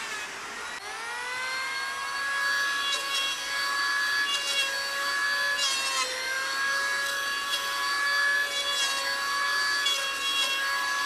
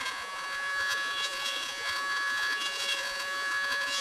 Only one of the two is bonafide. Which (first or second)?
first